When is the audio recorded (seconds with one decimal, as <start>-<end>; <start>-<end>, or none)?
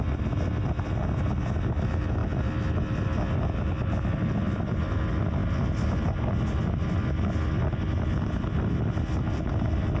0.0-10.0